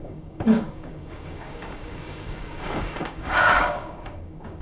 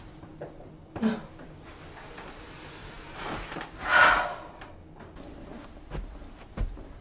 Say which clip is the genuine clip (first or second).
second